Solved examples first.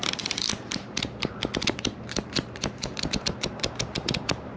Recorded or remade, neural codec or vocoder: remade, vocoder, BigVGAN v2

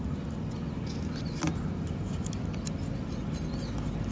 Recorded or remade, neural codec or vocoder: recorded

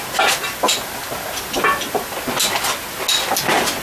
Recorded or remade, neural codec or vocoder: recorded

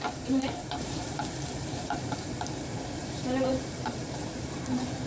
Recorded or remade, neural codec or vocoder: remade, vocoder, BigVGAN v2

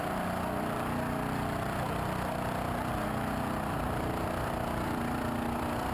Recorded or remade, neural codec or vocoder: remade, vocoder, BigVGAN v2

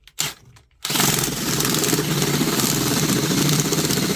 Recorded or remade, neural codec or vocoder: recorded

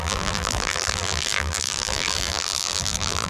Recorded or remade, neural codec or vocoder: remade, vocoder, BigVGAN v2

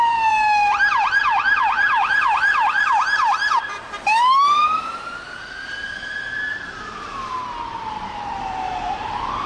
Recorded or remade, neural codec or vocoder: remade, vocoder, BigVGAN v2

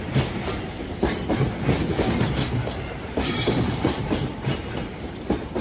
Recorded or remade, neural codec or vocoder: remade, vocoder, BigVGAN v2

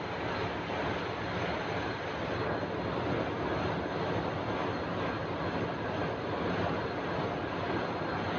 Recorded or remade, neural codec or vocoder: recorded